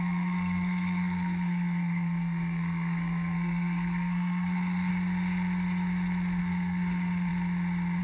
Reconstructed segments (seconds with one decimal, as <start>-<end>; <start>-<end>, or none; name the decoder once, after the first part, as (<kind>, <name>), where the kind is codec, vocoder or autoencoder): 0.0-4.9 (codec, SNAC); 6.4-7.3